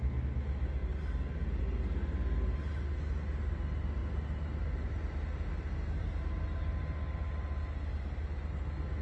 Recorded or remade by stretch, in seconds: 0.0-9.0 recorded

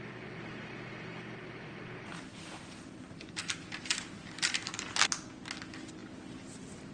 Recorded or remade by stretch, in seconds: 0.0-3.4 recorded; 3.4-4.2 remade; 4.2-6.9 recorded

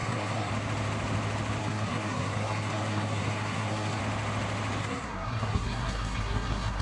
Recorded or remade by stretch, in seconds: 0.0-0.5 remade; 0.5-1.6 recorded; 1.6-4.0 remade; 4.0-4.8 recorded; 4.8-6.8 remade

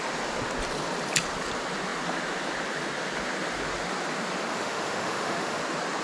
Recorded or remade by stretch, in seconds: 0.0-4.5 recorded; 4.5-5.6 remade; 5.6-6.0 recorded

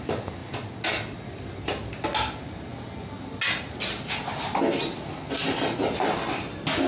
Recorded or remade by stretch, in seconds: 0.0-6.9 recorded

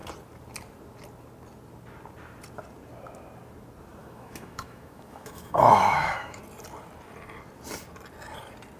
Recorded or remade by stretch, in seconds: 0.0-4.0 recorded; 4.0-6.4 remade; 6.4-8.8 recorded